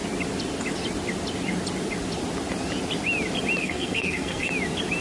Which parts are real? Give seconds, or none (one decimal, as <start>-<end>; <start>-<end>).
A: 0.0-3.6; 4.5-5.0